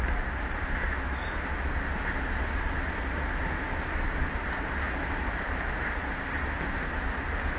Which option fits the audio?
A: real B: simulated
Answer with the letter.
A